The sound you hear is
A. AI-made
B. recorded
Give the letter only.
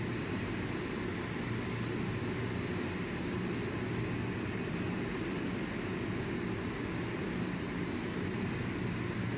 B